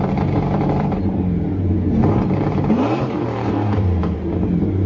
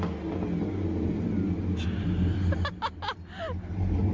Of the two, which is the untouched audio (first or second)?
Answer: second